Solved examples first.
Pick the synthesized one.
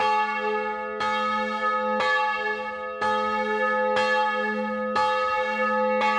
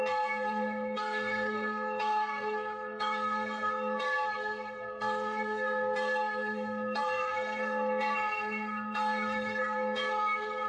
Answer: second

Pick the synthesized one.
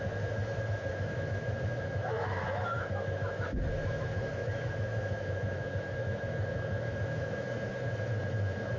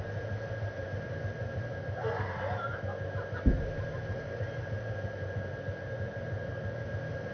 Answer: first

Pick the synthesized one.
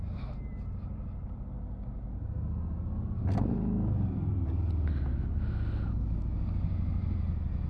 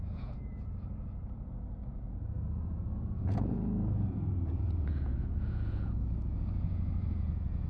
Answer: second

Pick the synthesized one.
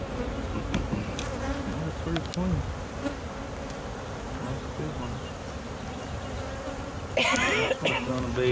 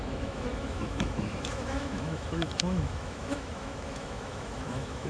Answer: second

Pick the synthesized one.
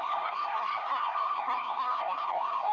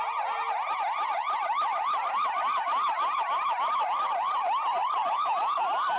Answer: first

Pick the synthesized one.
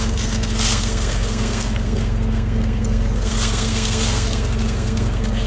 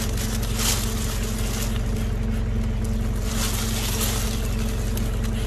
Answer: first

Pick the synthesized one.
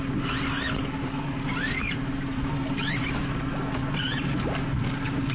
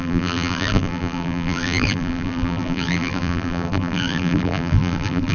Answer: second